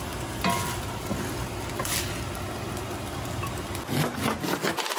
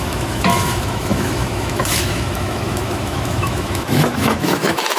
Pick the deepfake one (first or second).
second